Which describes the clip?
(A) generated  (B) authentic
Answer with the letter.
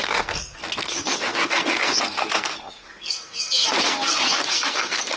A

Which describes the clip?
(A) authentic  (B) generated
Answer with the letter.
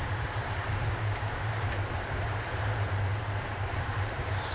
B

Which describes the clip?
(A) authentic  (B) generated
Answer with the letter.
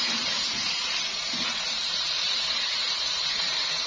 B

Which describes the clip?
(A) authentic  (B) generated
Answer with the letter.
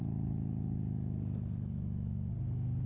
A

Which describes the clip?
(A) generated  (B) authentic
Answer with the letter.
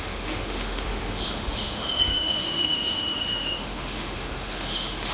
A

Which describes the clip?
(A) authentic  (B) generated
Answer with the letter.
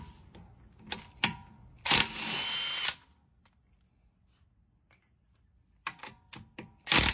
A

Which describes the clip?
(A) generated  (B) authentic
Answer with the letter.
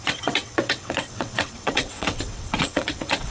A